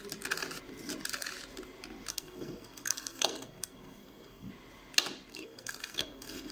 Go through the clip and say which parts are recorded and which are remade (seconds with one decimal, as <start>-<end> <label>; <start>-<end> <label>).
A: 0.0-2.1 recorded; 2.1-4.5 remade; 4.5-5.3 recorded; 5.3-6.5 remade